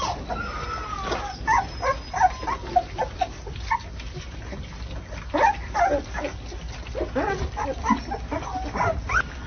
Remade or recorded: recorded